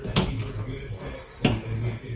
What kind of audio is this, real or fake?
real